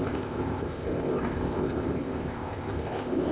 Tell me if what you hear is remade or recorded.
remade